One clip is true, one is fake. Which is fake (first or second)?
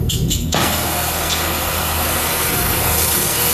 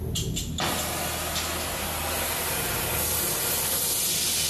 first